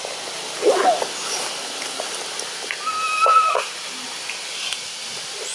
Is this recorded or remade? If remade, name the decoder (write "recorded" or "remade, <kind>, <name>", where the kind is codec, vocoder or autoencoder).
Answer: recorded